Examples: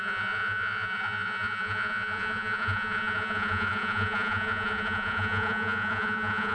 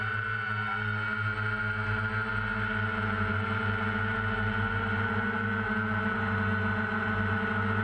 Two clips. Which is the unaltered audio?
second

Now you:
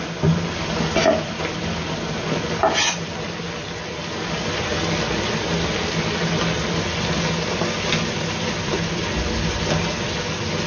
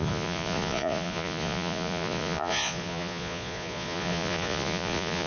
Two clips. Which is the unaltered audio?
first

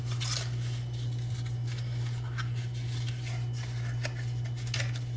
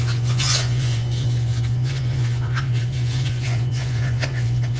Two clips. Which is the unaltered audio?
first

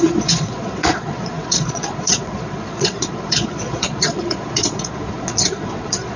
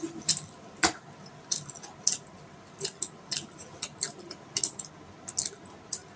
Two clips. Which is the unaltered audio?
second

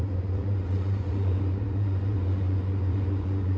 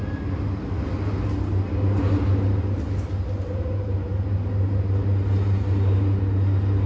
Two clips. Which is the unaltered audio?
second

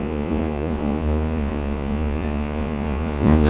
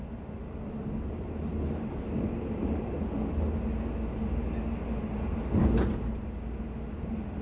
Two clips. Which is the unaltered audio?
second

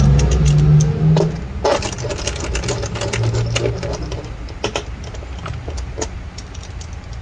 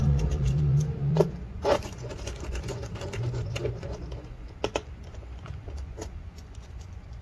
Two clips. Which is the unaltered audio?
first